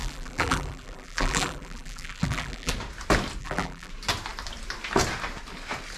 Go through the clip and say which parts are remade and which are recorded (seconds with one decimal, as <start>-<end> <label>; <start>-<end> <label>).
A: 0.0-2.7 remade; 2.7-3.4 recorded; 3.4-3.9 remade; 3.9-6.0 recorded